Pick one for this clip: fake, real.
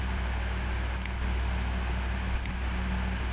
real